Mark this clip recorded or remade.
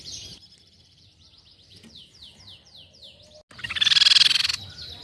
recorded